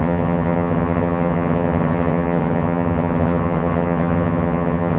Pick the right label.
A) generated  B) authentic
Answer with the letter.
A